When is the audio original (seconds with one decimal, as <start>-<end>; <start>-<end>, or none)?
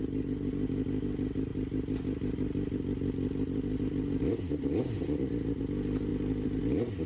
0.0-1.5; 5.6-6.1; 6.6-7.1